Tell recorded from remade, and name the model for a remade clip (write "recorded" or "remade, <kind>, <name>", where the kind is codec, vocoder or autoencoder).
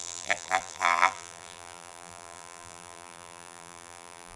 remade, vocoder, BigVGAN v2